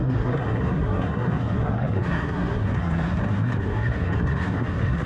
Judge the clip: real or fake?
fake